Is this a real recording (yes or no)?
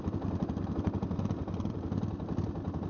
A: yes